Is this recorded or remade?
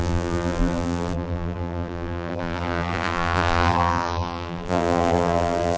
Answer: remade